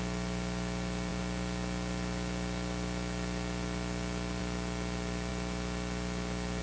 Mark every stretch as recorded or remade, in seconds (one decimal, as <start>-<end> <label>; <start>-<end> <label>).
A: 0.0-6.6 recorded